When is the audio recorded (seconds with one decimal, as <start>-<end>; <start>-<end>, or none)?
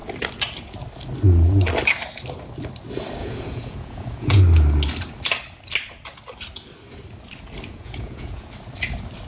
0.0-3.2; 4.4-7.7; 8.4-9.3